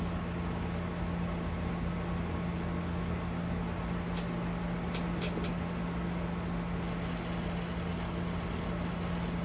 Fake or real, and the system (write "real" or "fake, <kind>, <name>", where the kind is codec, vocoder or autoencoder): real